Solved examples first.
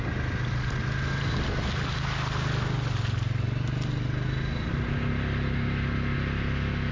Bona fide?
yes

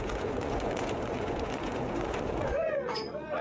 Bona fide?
no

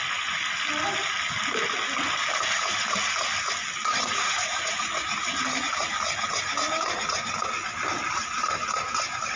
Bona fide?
yes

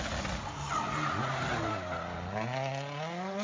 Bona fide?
yes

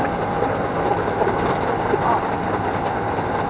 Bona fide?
yes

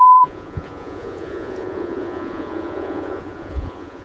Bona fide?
no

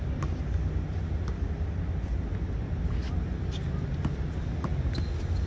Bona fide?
yes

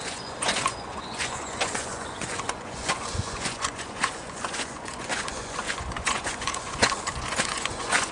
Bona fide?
no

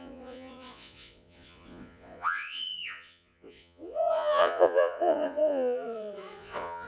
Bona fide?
no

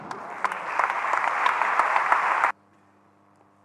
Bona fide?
yes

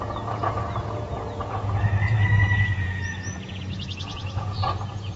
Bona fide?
no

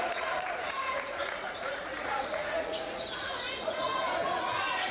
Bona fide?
no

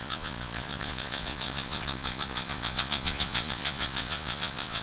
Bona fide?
no